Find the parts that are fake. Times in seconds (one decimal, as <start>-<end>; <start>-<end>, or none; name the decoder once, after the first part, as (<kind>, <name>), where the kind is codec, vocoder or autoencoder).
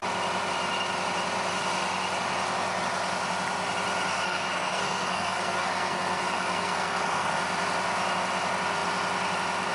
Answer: 4.1-7.4 (codec, SNAC)